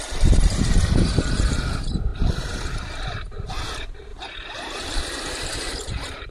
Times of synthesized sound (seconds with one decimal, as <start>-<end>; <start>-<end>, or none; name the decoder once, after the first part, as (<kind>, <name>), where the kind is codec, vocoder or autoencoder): 0.0-6.3 (vocoder, BigVGAN v2)